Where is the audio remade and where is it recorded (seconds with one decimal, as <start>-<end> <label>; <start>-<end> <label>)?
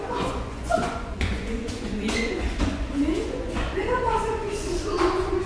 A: 0.0-5.5 remade